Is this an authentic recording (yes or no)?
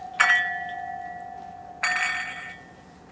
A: yes